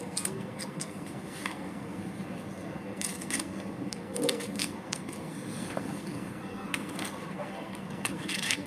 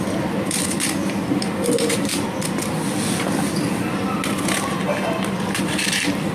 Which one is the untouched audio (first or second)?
second